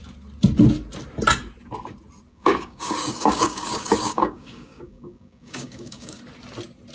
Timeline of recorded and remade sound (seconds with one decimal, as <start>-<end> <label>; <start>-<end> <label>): 0.0-2.3 recorded; 2.3-6.2 remade; 6.2-6.9 recorded